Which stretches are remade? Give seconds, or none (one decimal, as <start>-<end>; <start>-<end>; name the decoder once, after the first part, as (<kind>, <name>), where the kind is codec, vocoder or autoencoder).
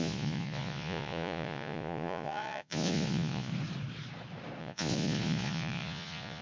0.0-3.5 (vocoder, Vocos); 4.6-6.4